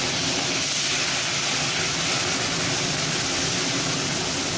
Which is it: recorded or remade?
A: recorded